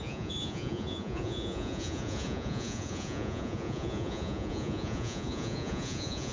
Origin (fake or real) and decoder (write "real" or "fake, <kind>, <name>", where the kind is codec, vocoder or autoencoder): fake, vocoder, Vocos